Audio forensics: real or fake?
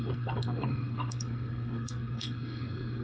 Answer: fake